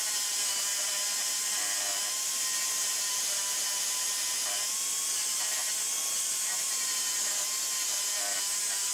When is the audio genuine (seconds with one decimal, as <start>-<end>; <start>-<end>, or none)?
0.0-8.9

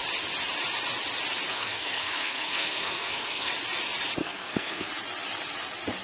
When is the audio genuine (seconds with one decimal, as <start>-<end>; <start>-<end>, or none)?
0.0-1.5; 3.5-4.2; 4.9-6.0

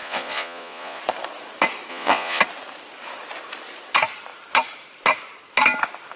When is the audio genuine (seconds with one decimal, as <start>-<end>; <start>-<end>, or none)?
1.0-1.9; 2.4-6.2

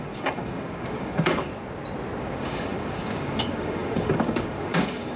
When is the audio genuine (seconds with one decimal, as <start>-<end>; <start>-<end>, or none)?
1.5-2.2